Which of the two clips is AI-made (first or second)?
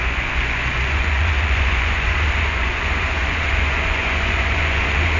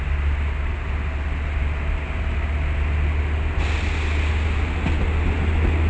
first